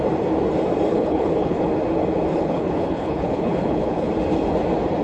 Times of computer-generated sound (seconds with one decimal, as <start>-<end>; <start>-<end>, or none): 0.9-1.7; 2.3-4.1